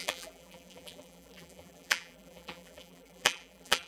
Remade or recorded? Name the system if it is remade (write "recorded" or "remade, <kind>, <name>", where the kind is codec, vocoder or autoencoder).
remade, vocoder, BigVGAN v2